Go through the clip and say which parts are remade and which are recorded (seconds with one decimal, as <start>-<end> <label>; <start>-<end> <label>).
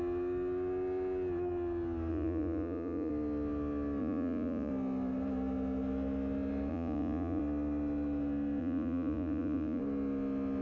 0.0-2.1 recorded; 2.1-3.1 remade; 3.1-4.0 recorded; 4.0-4.7 remade; 4.7-6.7 recorded; 6.7-7.4 remade; 7.4-8.6 recorded; 8.6-9.8 remade; 9.8-10.6 recorded